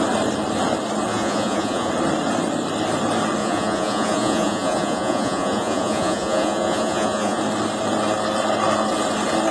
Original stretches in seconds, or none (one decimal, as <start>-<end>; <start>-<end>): 0.0-1.1; 1.9-3.4; 7.4-9.5

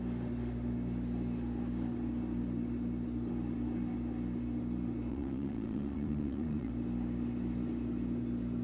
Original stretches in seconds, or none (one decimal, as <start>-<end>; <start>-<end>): 0.0-5.1; 6.7-8.6

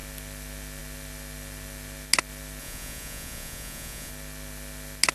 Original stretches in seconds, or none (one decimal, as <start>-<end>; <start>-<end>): 0.0-2.6; 4.1-5.1

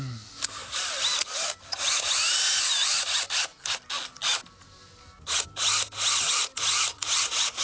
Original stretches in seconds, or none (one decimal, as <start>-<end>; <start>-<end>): 0.0-6.9